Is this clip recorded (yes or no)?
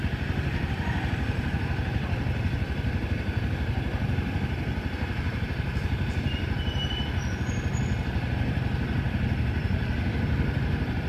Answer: yes